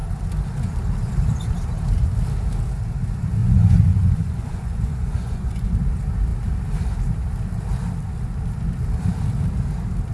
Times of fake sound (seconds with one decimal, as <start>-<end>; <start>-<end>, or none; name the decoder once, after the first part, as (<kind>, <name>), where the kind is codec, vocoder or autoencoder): 3.4-5.7 (vocoder, Vocos)